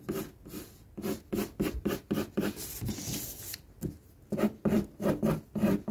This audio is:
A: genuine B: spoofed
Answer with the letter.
A